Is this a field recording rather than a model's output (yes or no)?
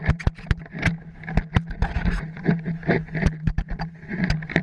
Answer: yes